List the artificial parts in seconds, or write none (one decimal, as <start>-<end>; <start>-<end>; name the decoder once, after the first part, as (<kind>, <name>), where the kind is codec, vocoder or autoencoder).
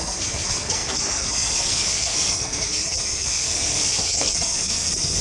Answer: 0.0-5.2 (codec, SNAC)